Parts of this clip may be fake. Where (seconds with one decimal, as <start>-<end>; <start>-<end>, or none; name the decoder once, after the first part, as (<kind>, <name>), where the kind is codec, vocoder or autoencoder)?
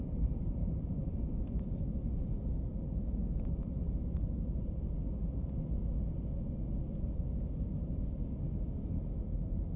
0.6-1.4 (vocoder, BigVGAN v2); 4.0-4.8